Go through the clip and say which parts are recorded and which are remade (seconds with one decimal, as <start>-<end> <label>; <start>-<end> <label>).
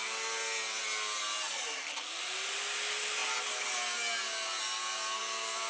0.0-5.7 recorded